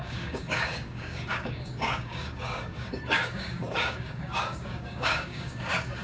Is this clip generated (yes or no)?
yes